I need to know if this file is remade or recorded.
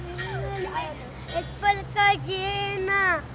recorded